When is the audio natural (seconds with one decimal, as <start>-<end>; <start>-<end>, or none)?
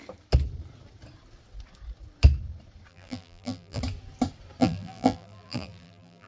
0.0-2.9; 3.8-4.6